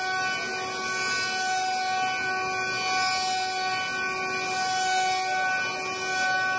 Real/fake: real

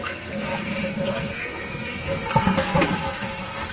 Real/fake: fake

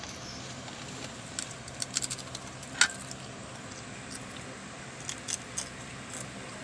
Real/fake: real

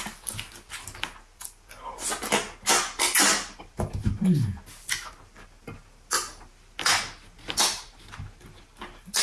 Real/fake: real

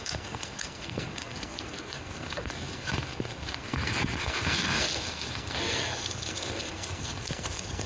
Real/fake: fake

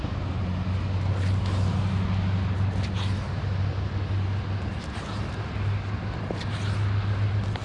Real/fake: real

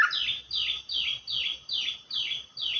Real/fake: real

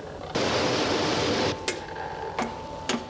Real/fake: real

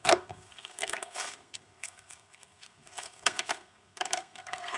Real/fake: fake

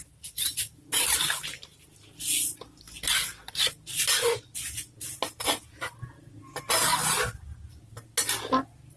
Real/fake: real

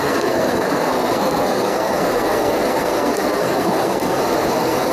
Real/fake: fake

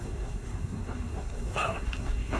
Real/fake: fake